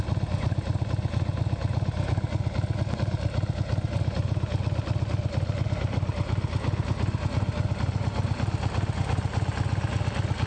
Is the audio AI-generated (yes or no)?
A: no